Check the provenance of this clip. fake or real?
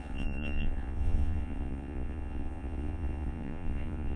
fake